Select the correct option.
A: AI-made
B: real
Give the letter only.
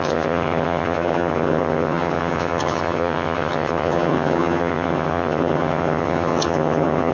A